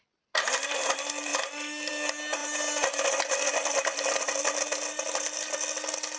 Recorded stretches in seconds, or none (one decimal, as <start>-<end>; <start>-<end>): 0.0-6.2